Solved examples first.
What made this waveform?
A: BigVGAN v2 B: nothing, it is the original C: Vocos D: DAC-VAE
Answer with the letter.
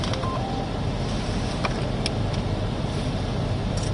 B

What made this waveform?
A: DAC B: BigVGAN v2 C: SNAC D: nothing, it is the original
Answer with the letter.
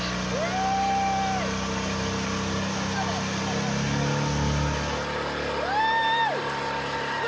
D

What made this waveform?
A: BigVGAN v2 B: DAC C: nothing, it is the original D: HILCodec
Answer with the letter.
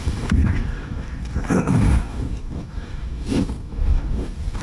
B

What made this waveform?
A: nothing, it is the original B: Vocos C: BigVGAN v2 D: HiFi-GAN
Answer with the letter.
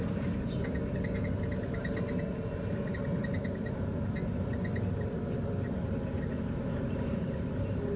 A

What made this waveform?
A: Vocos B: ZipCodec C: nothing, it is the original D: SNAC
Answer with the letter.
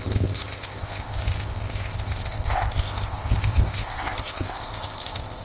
B